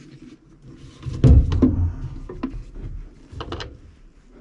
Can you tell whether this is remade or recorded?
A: recorded